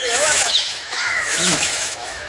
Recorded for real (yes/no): no